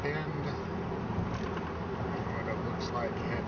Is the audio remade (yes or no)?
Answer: no